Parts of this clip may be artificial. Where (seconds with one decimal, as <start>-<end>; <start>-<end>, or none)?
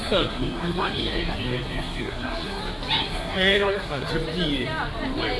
0.0-2.6; 3.0-4.1